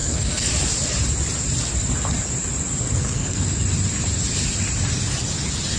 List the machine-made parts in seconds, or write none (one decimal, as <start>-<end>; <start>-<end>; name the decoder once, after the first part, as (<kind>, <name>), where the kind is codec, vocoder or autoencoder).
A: 0.0-0.5 (codec, SNAC); 2.8-3.5